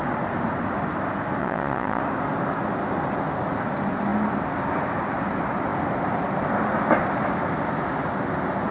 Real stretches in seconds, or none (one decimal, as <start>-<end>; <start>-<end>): 0.0-1.4; 2.0-8.7